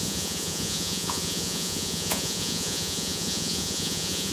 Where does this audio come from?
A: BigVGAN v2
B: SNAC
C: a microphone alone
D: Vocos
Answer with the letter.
D